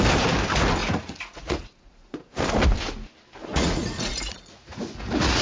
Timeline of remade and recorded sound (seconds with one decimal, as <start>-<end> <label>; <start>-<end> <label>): 0.0-0.8 recorded; 0.8-2.3 remade; 2.3-3.5 recorded; 3.5-5.4 remade